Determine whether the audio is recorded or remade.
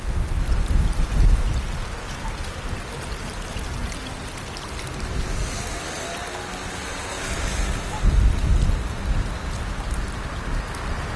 recorded